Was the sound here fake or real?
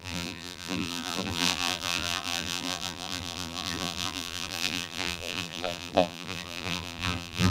fake